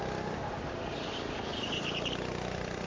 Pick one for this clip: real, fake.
real